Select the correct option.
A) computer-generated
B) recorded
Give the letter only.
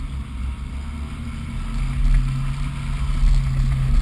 B